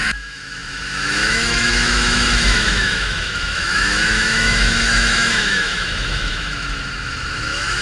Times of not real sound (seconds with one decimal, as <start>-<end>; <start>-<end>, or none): 0.0-7.8